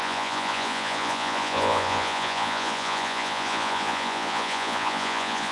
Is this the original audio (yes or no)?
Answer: no